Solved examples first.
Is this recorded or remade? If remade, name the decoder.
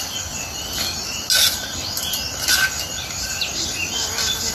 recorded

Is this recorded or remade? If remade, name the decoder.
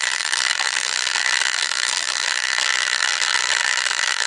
remade, vocoder, BigVGAN v2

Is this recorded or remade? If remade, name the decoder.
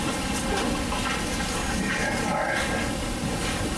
recorded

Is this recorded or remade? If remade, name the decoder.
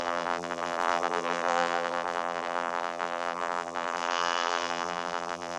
remade, vocoder, BigVGAN v2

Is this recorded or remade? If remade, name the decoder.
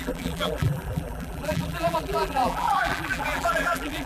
remade, vocoder, BigVGAN v2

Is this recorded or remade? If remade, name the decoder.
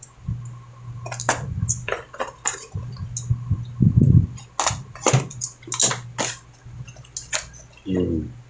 recorded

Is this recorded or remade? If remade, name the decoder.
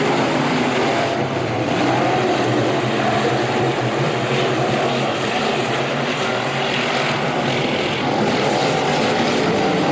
remade, vocoder, BigVGAN v2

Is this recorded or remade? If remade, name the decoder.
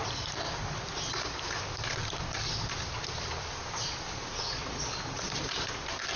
remade, vocoder, BigVGAN v2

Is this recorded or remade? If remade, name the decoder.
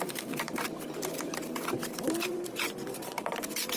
remade, vocoder, BigVGAN v2